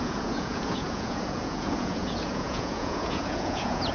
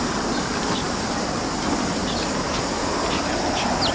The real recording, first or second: second